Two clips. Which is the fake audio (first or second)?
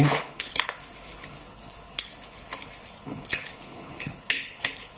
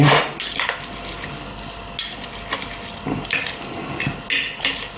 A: first